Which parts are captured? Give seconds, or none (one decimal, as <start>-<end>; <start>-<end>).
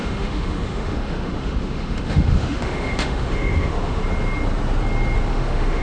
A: 4.0-5.3